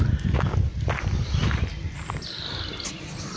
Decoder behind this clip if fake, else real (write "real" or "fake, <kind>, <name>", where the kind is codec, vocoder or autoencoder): real